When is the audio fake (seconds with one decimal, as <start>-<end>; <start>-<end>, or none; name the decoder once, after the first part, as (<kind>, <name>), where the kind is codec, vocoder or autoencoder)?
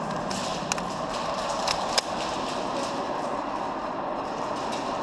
none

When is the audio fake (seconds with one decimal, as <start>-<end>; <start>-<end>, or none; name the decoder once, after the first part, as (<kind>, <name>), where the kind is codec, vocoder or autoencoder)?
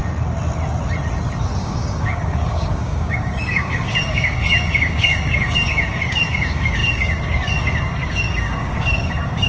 1.6-9.5 (codec, DAC)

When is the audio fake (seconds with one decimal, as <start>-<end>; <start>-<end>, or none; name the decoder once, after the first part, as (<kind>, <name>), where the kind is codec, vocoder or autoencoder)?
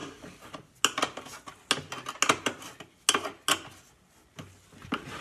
0.0-0.8 (vocoder, BigVGAN v2)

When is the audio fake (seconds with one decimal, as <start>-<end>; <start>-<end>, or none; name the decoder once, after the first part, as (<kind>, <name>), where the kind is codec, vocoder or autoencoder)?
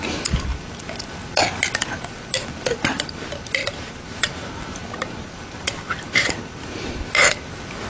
0.5-1.1 (vocoder, BigVGAN v2); 3.6-7.5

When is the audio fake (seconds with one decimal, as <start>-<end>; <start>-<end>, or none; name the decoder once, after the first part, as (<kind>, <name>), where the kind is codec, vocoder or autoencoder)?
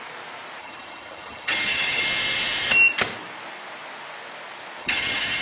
0.6-2.0 (vocoder, HiFi-GAN); 4.8-5.4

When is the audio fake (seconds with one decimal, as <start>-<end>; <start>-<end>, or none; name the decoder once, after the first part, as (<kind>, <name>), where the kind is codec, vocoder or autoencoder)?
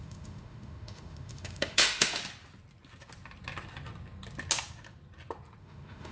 0.0-2.2 (autoencoder, DAC-VAE); 5.6-6.1